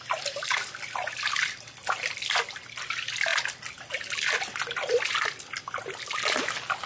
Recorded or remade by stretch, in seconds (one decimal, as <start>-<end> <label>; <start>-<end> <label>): 0.0-6.9 recorded